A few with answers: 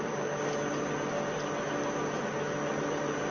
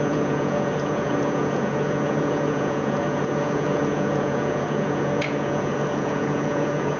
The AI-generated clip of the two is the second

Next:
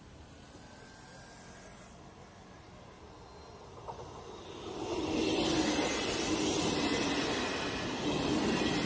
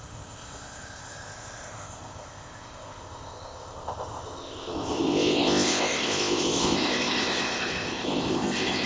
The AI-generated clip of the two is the second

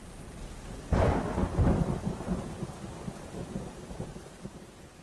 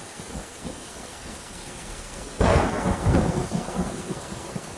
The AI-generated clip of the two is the second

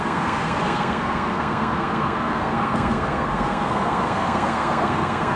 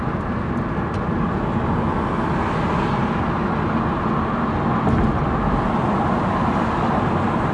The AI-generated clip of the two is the first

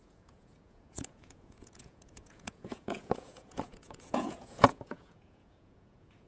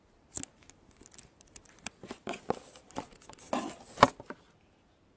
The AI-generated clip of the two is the first